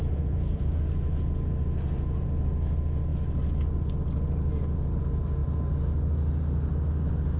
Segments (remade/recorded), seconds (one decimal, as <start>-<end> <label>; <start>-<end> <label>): 0.0-0.8 remade; 0.8-7.4 recorded